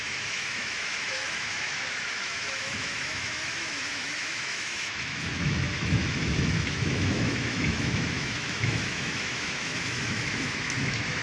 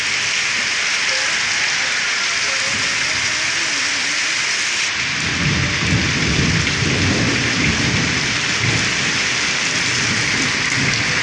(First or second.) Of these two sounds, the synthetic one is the first